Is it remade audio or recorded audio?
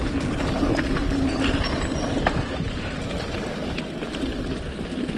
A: recorded